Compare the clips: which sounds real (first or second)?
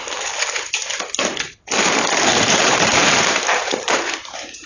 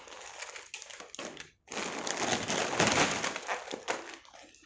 second